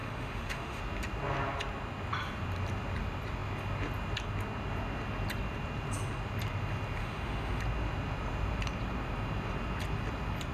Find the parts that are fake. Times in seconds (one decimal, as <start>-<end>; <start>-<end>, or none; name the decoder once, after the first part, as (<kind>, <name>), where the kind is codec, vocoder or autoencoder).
0.0-0.8 (autoencoder, DAC-VAE); 7.0-7.6